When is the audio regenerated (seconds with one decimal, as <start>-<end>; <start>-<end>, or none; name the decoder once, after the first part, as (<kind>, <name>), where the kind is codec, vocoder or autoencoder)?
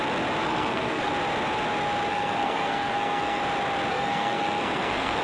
0.4-1.1 (codec, SNAC); 2.1-3.4; 3.9-5.2